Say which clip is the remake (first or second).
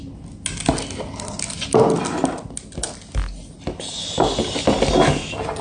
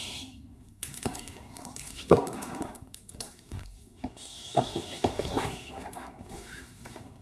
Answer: second